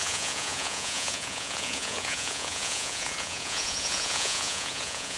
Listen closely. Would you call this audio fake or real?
fake